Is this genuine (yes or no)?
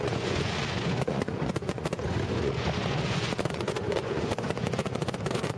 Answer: no